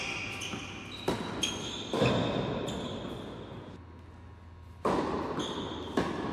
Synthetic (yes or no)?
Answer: no